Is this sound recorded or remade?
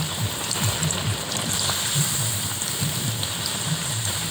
remade